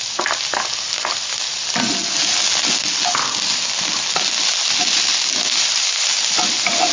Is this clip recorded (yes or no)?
yes